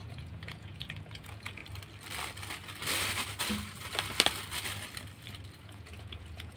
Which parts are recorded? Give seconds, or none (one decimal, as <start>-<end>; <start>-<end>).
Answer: 1.6-5.6